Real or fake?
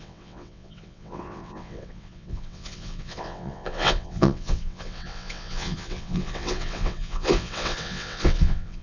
fake